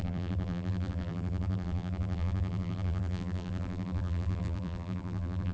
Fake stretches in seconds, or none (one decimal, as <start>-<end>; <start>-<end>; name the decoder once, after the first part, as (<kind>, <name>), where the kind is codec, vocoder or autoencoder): 0.0-5.5 (vocoder, BigVGAN v2)